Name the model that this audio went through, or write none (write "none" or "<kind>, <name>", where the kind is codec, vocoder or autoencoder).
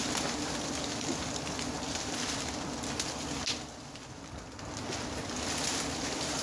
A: none